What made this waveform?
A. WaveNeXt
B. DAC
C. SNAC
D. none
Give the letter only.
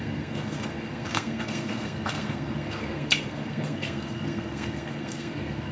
C